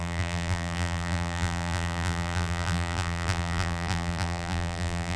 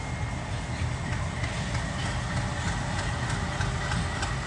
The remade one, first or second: first